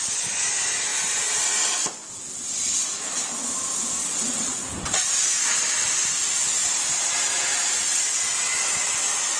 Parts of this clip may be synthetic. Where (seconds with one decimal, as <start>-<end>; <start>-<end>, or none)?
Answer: 4.0-5.0

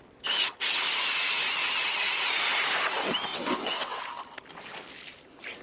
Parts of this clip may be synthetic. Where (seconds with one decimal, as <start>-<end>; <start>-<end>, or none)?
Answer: 3.3-4.0